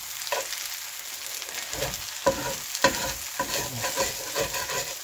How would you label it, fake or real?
real